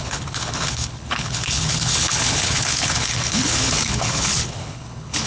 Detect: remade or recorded remade